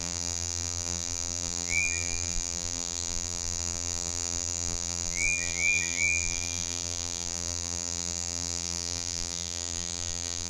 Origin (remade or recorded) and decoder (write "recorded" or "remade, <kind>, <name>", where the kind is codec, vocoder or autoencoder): remade, vocoder, BigVGAN v2